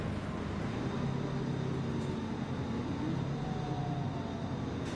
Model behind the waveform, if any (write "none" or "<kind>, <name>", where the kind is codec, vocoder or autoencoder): none